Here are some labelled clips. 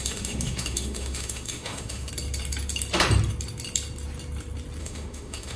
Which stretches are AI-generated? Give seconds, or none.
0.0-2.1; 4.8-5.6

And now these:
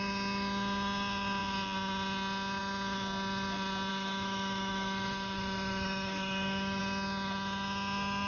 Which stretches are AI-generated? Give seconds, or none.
3.9-6.8

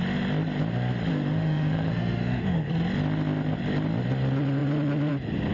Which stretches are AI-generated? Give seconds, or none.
1.1-2.7